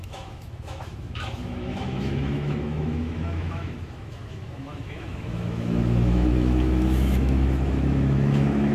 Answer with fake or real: fake